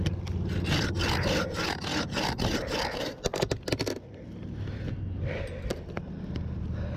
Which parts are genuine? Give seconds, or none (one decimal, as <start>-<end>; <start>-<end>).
0.0-7.0